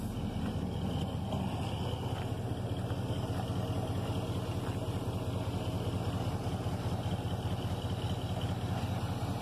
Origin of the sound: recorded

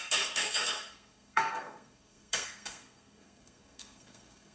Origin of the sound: remade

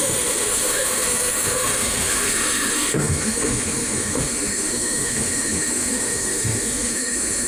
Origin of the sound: remade